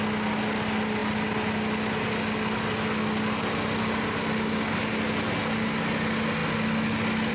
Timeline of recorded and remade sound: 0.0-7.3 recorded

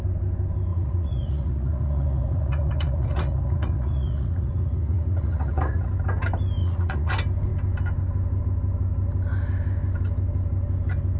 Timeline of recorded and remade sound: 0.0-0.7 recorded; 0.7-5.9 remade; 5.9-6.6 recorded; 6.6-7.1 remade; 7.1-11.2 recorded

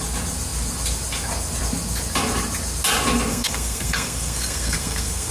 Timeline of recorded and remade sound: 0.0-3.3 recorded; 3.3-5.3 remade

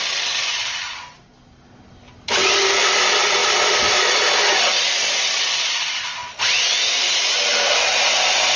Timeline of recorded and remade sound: 0.0-0.5 recorded; 0.5-1.3 remade; 1.3-3.4 recorded; 3.4-5.6 remade; 5.6-8.6 recorded